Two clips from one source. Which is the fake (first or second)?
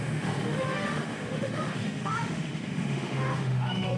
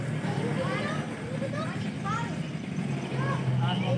first